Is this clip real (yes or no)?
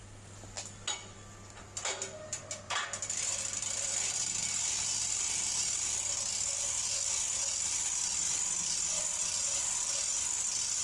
yes